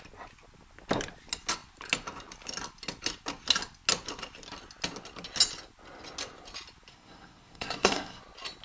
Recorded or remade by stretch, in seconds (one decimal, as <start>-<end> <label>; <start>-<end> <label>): 0.0-6.9 recorded; 6.9-8.2 remade; 8.2-8.6 recorded